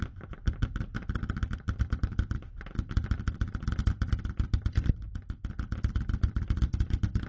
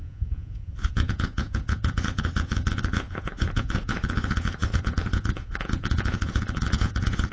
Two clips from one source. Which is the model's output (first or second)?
second